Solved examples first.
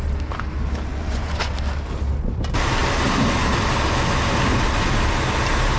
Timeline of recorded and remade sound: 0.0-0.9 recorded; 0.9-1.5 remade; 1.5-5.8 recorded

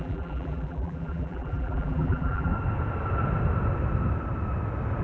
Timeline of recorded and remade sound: 0.0-2.5 remade; 2.5-5.0 recorded

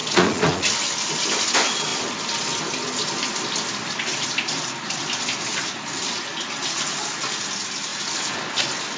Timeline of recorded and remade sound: 0.0-0.7 remade; 0.7-9.0 recorded

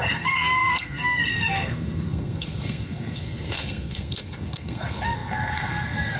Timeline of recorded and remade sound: 0.0-6.2 remade

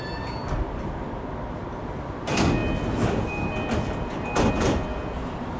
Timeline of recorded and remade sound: 0.0-5.6 recorded

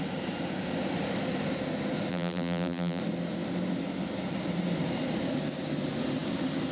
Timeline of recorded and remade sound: 0.0-2.1 recorded; 2.1-3.0 remade; 3.0-6.7 recorded

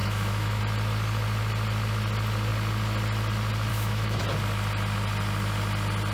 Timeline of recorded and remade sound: 0.0-0.6 remade; 0.6-3.7 recorded; 3.7-4.2 remade; 4.2-6.1 recorded

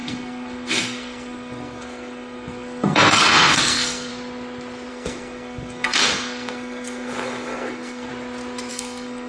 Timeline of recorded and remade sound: 0.0-4.1 remade; 4.1-4.9 recorded; 4.9-8.1 remade; 8.1-8.7 recorded; 8.7-9.3 remade